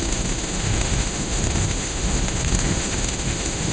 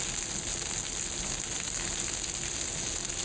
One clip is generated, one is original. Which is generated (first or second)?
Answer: first